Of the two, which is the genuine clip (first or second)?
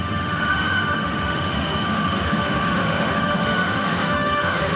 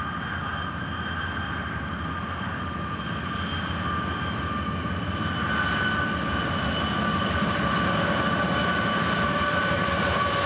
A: second